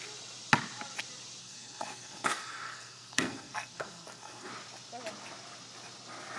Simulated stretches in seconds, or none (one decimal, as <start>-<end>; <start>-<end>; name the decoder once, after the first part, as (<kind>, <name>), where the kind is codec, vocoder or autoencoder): 1.4-4.5 (codec, SNAC)